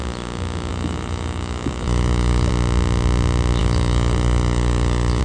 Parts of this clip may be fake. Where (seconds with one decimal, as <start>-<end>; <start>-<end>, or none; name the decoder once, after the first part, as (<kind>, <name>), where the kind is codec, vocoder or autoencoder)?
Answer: 0.7-2.5 (autoencoder, DAC-VAE); 3.6-5.2